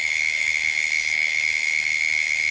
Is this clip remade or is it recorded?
remade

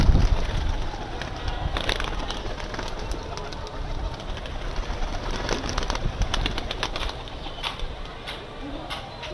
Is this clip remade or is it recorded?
recorded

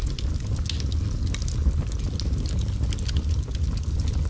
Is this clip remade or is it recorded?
recorded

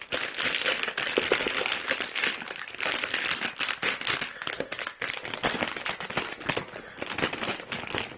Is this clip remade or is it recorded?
recorded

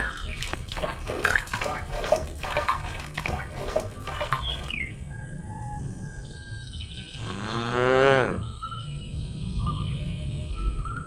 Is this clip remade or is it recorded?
remade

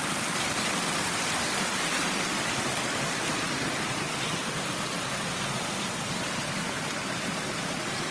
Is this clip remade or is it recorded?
recorded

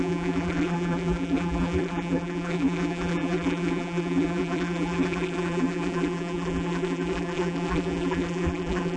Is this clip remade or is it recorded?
remade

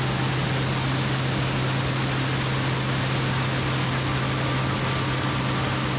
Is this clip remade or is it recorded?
recorded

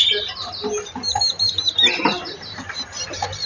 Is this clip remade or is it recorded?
recorded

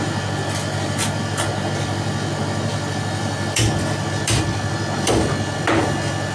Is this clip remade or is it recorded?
remade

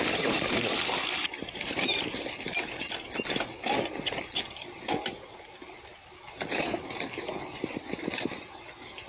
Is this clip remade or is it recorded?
recorded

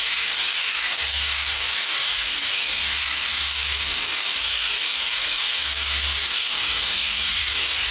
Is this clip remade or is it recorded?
remade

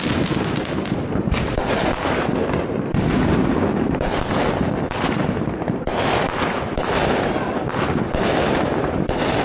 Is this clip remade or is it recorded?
recorded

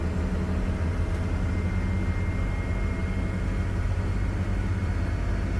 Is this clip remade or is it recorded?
recorded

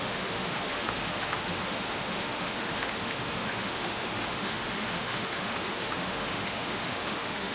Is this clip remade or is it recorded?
remade